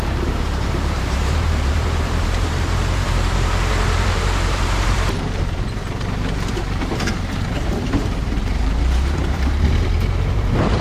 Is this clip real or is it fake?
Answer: fake